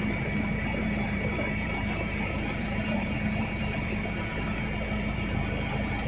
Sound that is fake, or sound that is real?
fake